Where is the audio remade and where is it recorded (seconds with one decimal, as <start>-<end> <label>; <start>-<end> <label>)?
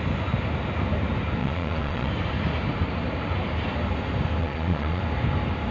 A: 0.0-1.4 recorded; 1.4-2.1 remade; 2.1-4.4 recorded; 4.4-5.0 remade; 5.0-5.7 recorded